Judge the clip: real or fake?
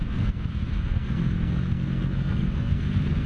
fake